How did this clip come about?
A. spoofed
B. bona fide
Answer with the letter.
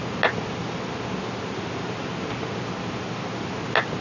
B